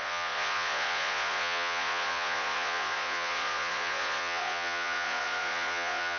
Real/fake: fake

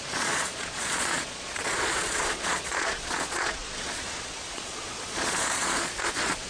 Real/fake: fake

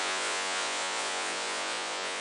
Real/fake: fake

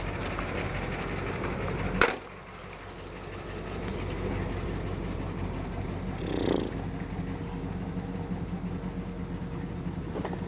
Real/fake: real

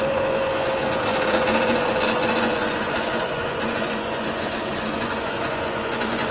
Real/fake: fake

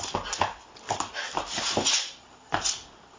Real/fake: real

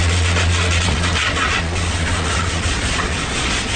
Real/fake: fake